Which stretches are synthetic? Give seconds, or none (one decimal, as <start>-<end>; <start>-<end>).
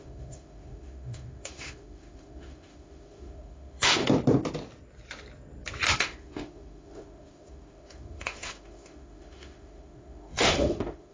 0.0-4.0; 6.0-11.1